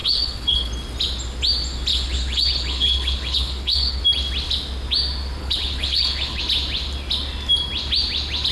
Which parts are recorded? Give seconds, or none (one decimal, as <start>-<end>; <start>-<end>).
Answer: 0.7-1.9; 4.0-5.4; 6.4-8.5